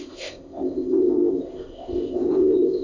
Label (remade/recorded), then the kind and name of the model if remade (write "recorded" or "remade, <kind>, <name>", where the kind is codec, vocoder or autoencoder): remade, codec, ZipCodec